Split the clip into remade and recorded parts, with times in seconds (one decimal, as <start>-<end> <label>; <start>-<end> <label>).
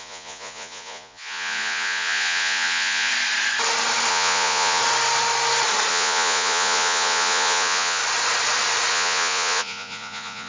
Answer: 0.0-3.1 remade; 3.1-4.1 recorded; 4.1-4.8 remade; 4.8-5.9 recorded; 5.9-8.0 remade; 8.0-8.9 recorded; 8.9-10.5 remade